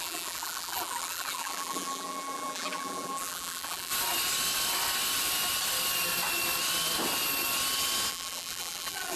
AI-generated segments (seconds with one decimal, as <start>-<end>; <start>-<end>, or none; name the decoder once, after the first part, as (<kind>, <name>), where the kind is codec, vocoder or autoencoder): 0.0-3.9 (vocoder, BigVGAN v2); 8.1-9.2